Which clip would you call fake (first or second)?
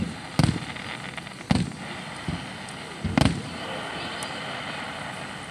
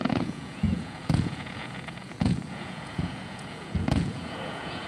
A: second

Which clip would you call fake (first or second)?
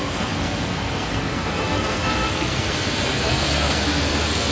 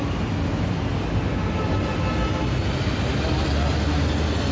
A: first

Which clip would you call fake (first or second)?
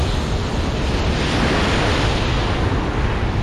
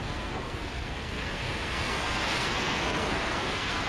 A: second